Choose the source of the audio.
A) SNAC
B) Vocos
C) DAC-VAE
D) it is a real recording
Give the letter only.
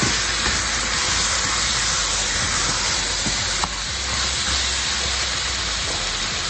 D